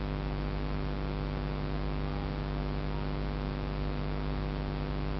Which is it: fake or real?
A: real